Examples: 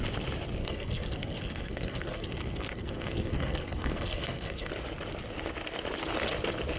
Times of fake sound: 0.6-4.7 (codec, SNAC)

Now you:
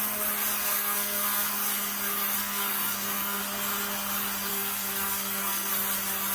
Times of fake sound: 0.6-1.5 (codec, SNAC); 2.4-3.4; 4.5-5.7